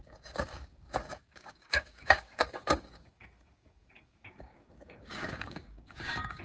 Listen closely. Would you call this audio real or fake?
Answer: fake